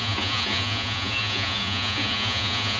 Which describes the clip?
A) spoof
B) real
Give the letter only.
A